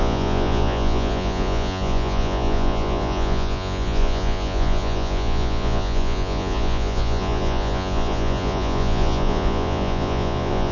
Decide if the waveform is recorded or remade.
remade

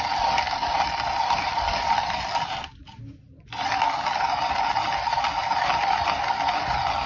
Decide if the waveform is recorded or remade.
recorded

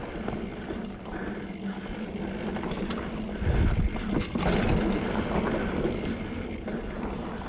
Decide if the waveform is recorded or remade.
recorded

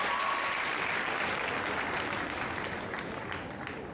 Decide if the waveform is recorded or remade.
recorded